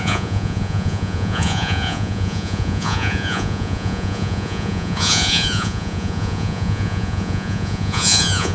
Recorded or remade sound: remade